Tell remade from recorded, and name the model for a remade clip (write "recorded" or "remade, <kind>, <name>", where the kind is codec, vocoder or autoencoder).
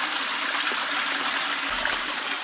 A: recorded